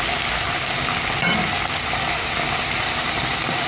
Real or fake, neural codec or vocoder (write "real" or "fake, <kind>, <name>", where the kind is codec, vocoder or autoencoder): real